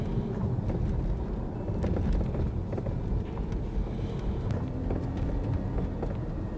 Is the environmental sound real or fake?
real